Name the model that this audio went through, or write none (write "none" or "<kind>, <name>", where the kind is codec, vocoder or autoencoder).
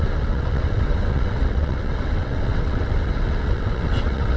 vocoder, WaveNeXt